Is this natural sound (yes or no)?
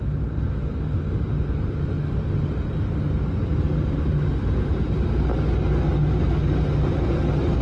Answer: yes